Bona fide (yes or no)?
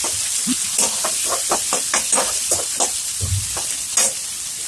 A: yes